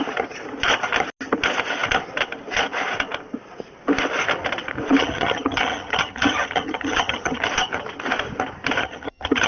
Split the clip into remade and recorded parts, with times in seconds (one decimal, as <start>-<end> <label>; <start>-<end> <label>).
0.0-5.0 recorded; 5.0-7.5 remade; 7.5-8.8 recorded; 8.8-9.5 remade